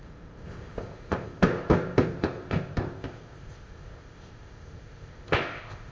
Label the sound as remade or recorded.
remade